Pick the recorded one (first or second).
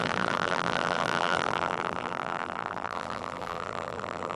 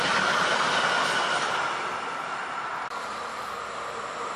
second